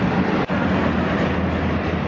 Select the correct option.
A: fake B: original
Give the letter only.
B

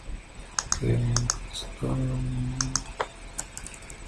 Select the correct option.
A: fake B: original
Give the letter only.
B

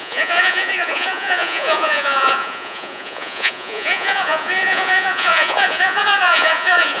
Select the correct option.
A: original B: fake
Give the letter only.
B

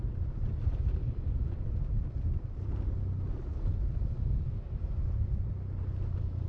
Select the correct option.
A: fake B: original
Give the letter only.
B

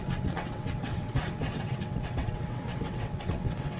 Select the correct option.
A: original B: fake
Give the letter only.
B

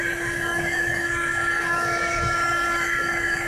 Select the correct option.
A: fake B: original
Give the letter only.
A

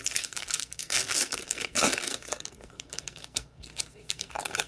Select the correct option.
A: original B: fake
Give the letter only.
B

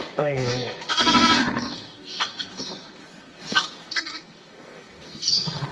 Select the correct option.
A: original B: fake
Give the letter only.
B